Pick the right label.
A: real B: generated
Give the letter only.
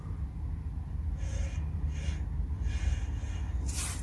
A